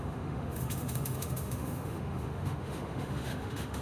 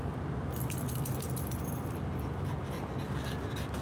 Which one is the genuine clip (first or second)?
second